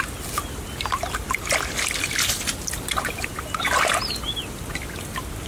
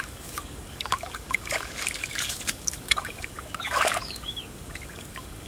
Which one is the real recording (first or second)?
first